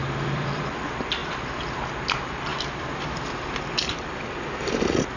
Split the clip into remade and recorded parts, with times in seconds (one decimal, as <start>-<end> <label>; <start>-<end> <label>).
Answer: 0.0-0.6 remade; 0.6-1.2 recorded; 1.2-1.9 remade; 1.9-2.5 recorded; 2.5-4.2 remade; 4.2-5.2 recorded